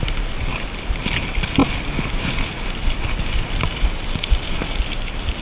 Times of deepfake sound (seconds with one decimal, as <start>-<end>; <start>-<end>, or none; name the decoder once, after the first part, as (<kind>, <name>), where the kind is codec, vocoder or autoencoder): none